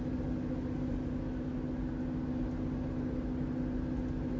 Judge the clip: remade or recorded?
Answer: recorded